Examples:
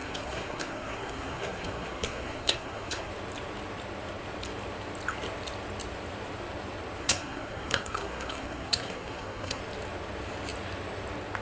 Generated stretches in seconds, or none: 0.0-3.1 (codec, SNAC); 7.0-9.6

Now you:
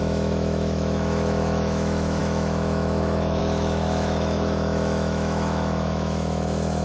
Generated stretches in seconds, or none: 0.0-6.8 (autoencoder, DAC-VAE)

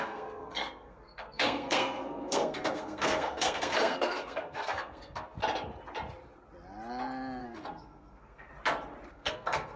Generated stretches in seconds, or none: 0.0-5.4 (codec, SNAC); 7.4-8.5; 9.1-9.8

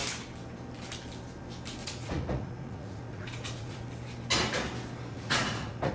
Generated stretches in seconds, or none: 1.8-3.8 (vocoder, Vocos); 5.1-5.9

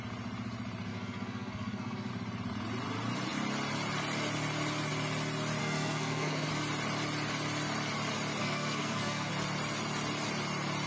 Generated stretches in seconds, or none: 0.9-2.1 (codec, SNAC); 5.6-6.5; 8.4-9.3

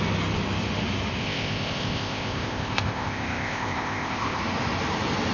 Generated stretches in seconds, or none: 1.2-4.4 (codec, ZipCodec)